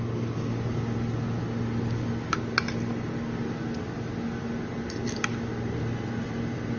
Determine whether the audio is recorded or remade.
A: recorded